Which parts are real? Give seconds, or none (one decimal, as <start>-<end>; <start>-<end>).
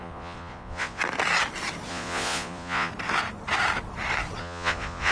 1.0-1.9; 2.9-4.4